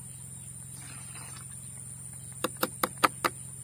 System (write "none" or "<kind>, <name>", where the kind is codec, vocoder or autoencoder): none